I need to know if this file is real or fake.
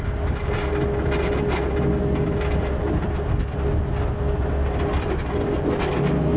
real